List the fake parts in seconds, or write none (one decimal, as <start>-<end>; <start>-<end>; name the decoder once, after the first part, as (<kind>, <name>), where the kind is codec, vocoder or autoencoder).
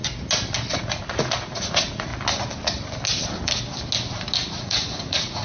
0.7-2.1 (vocoder, Vocos); 4.5-5.4